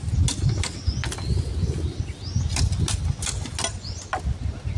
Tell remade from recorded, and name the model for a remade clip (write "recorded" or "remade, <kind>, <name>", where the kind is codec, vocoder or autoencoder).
recorded